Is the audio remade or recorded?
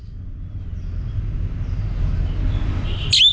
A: recorded